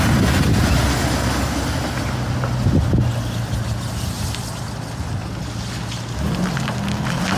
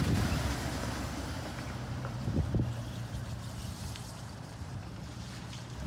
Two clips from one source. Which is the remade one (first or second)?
second